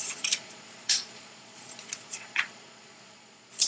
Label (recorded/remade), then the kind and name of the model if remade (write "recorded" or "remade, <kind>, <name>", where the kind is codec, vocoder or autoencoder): remade, vocoder, Vocos